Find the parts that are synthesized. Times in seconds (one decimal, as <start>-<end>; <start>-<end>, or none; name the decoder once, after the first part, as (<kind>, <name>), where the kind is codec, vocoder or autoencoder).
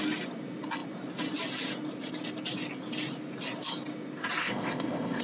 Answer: 4.4-5.2 (codec, ZipCodec)